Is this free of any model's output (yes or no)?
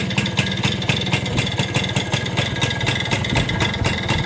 yes